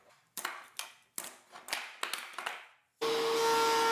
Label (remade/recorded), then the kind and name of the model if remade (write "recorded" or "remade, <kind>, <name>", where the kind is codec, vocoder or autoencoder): recorded